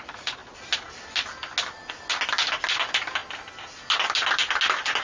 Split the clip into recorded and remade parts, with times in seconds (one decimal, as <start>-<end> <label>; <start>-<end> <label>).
0.0-5.0 recorded